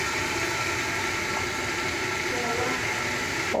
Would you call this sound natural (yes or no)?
yes